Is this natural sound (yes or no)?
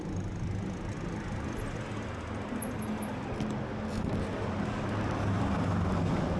yes